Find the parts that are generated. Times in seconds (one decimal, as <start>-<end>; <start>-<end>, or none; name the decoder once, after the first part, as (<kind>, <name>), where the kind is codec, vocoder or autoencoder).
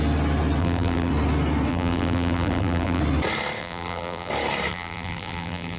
0.6-1.1 (vocoder, BigVGAN v2); 1.7-3.0; 3.6-4.3; 4.7-5.8